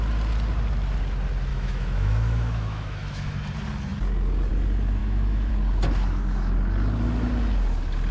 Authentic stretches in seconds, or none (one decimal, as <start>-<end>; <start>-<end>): 0.0-1.5; 3.4-5.0; 5.5-8.1